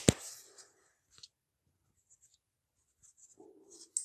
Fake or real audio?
real